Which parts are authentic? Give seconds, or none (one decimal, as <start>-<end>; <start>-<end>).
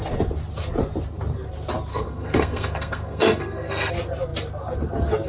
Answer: 0.0-1.9; 3.9-5.3